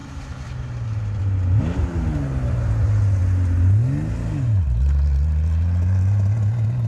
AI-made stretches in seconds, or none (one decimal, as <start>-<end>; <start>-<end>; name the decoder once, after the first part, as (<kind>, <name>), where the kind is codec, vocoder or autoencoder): 0.0-1.6 (vocoder, BigVGAN v2)